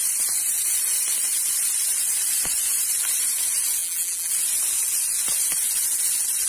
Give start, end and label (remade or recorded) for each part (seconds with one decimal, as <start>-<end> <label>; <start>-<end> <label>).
0.0-3.8 recorded; 3.8-4.3 remade; 4.3-6.5 recorded